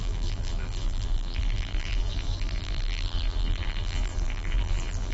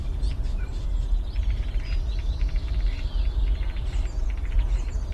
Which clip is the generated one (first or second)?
first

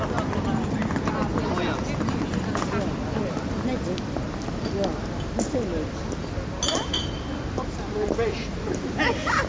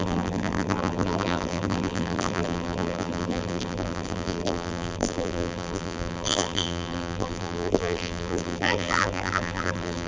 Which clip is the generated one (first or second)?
second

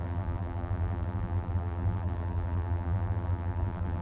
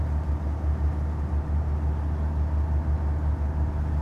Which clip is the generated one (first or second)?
first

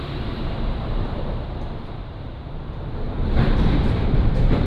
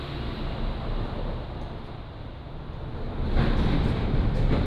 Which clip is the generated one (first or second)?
first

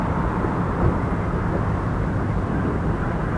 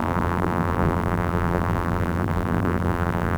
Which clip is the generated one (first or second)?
second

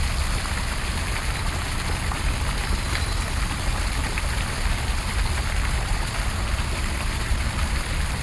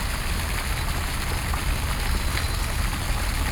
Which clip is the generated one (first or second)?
first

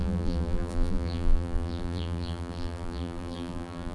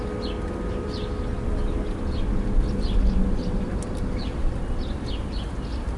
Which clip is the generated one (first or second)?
first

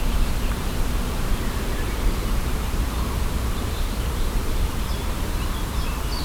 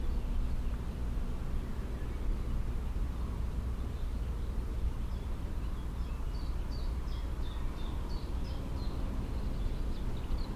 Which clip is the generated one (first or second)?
first